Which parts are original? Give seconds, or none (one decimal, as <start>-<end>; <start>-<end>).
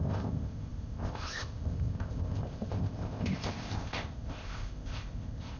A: none